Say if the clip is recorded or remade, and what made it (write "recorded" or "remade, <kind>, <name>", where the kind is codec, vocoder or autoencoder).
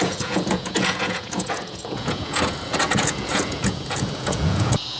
remade, vocoder, Vocos